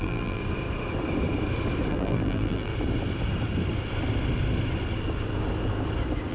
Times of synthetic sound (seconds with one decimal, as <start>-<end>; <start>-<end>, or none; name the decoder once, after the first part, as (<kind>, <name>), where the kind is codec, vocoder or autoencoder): 0.0-0.4 (vocoder, BigVGAN v2); 1.9-2.7